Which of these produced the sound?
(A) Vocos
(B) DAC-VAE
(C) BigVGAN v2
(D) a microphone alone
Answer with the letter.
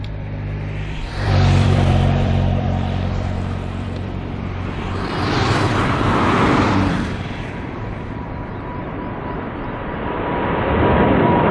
C